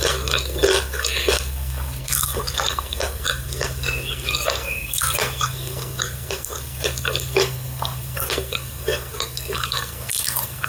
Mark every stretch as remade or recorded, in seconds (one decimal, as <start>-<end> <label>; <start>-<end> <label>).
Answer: 0.0-10.7 remade